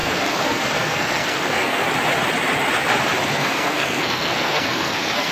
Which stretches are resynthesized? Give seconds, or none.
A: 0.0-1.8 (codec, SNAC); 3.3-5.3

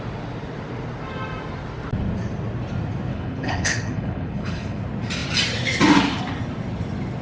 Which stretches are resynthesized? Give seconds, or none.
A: 3.1-4.8 (codec, HILCodec)

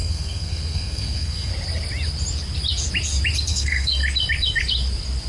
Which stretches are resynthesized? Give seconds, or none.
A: 0.0-1.5 (codec, SNAC); 3.5-4.0

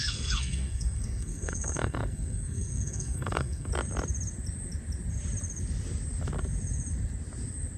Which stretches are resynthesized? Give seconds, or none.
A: 0.0-3.7 (codec, SNAC)